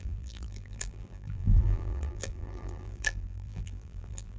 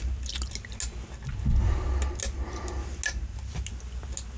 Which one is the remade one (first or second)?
first